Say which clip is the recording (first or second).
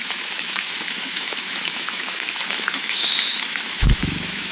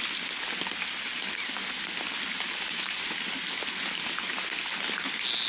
second